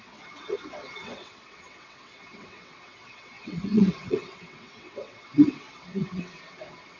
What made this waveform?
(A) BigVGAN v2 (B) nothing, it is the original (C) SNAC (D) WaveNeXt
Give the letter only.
D